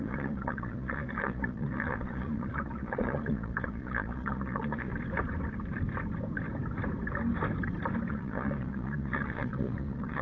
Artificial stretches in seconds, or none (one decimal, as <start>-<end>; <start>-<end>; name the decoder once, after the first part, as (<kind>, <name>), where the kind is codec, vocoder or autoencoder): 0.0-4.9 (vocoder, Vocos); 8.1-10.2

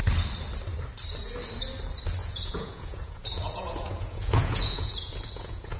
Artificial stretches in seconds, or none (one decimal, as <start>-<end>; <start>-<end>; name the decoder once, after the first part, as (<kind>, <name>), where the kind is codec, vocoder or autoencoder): 2.2-5.8 (vocoder, Vocos)

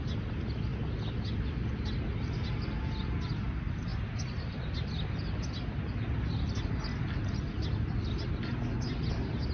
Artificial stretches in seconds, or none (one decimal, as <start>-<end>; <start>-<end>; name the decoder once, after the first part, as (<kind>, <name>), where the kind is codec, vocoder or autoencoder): none